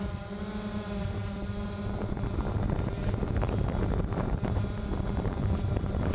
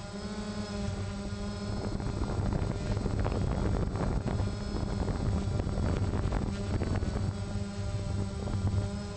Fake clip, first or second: first